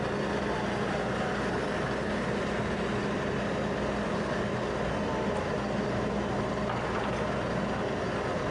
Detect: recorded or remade recorded